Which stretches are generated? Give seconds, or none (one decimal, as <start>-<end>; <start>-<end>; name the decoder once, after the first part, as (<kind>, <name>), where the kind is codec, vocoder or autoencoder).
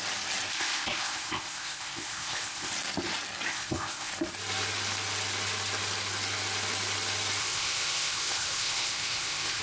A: 0.5-2.7 (codec, ZipCodec); 3.5-4.1; 7.4-9.6